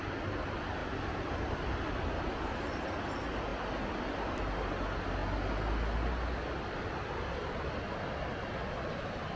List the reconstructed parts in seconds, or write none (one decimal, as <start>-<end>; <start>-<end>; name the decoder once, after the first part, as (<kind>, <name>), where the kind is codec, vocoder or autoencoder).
none